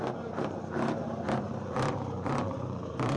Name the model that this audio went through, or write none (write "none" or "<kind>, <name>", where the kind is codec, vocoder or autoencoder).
vocoder, BigVGAN v2